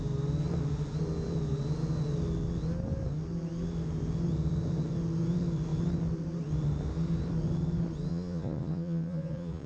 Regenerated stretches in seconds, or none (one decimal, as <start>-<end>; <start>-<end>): 8.1-9.7